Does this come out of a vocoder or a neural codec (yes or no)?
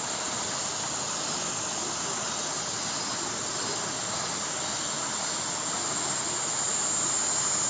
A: no